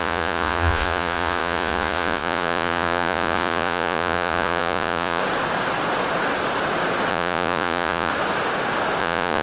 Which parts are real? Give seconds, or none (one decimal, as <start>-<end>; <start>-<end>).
5.2-7.1; 8.1-9.0